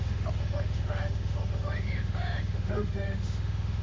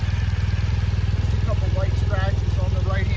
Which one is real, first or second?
second